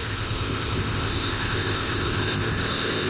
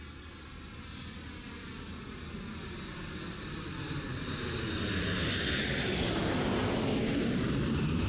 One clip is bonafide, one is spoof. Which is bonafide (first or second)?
second